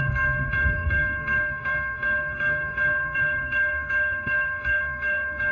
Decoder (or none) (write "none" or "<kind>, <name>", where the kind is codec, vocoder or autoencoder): codec, SNAC